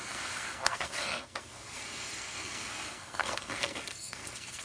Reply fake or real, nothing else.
fake